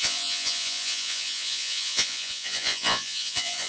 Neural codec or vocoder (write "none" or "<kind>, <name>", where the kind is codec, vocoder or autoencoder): vocoder, Vocos